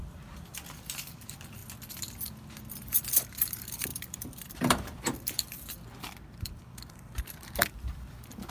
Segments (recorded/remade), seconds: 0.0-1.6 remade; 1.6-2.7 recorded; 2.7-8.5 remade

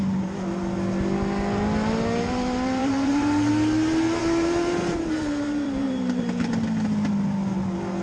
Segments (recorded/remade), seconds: 0.0-2.8 recorded; 2.8-3.5 remade; 3.5-4.2 recorded; 4.2-6.5 remade; 6.5-8.0 recorded

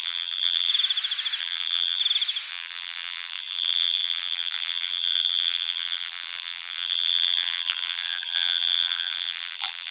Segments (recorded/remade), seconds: 0.0-0.7 remade; 0.7-1.4 recorded; 1.4-2.0 remade; 2.0-2.5 recorded; 2.5-9.9 remade